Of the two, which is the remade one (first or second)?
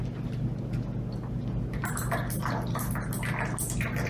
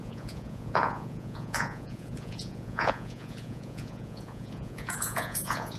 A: second